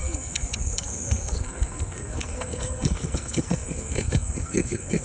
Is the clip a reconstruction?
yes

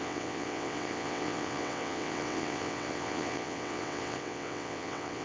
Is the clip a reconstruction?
yes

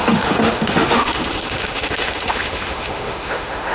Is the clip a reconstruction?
yes